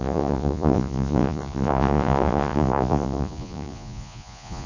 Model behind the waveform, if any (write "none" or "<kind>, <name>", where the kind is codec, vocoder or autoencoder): vocoder, Vocos